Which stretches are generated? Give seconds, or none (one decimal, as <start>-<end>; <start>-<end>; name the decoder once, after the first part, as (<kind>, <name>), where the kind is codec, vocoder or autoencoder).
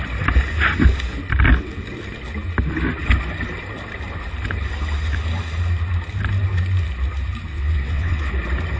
7.5-8.3 (vocoder, WaveNeXt)